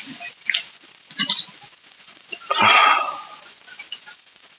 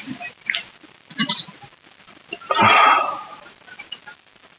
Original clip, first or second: second